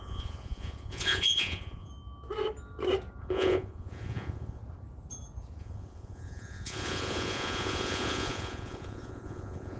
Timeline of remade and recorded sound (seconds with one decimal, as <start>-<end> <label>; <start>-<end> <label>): 0.0-1.9 remade; 1.9-3.2 recorded; 3.2-4.6 remade; 4.6-5.6 recorded; 5.6-9.8 remade